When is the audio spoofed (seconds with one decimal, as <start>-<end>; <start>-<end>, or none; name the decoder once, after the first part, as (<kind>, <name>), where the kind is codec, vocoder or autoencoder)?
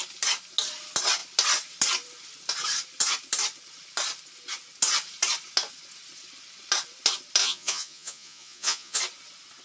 7.4-9.0 (vocoder, Vocos)